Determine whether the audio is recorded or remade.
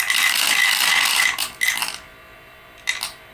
recorded